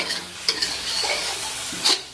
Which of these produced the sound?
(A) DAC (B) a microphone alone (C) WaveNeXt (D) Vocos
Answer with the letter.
A